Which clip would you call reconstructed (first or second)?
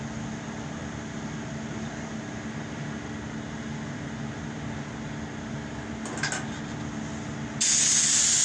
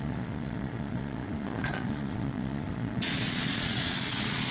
second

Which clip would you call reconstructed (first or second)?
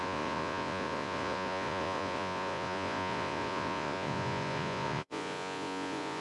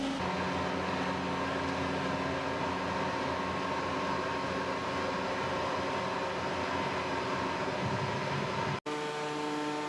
first